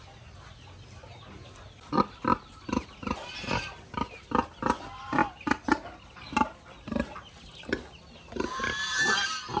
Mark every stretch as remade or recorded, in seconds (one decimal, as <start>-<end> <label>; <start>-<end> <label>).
0.0-9.6 recorded